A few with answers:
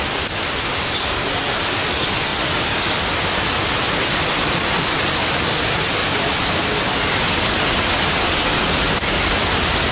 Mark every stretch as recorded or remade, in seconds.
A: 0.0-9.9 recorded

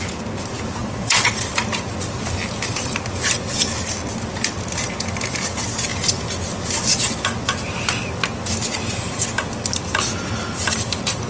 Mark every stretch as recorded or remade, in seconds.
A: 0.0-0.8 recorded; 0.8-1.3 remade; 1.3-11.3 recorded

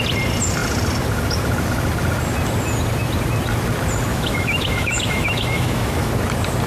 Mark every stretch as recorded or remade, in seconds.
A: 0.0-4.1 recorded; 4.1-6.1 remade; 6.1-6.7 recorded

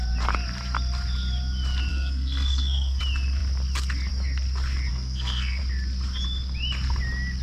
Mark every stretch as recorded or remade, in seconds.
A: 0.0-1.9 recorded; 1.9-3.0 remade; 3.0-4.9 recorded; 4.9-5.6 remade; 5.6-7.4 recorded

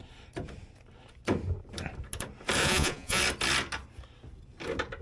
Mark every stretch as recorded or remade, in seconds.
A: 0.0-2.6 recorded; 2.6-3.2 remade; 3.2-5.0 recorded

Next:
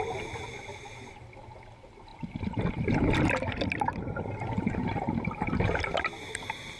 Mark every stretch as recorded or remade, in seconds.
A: 0.0-6.8 recorded